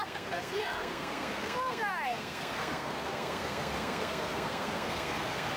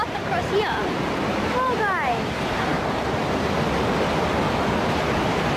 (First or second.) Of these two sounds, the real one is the second